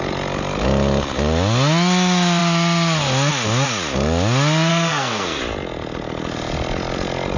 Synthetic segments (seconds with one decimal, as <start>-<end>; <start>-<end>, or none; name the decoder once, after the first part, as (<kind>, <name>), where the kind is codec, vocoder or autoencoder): 4.7-5.4 (codec, SNAC)